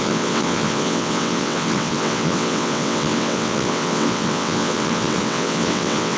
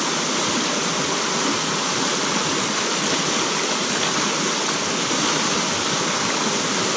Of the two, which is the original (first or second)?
second